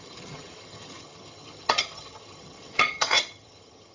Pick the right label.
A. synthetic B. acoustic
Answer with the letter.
A